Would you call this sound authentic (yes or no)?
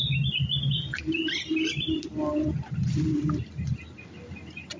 yes